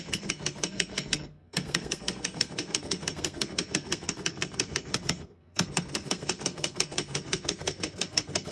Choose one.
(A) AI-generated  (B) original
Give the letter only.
A